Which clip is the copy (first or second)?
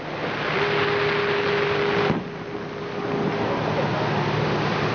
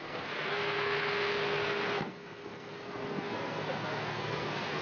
second